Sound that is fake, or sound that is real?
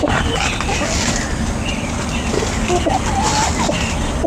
real